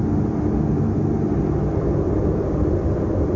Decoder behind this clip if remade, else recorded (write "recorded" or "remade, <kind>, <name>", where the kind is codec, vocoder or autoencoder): remade, vocoder, BigVGAN v2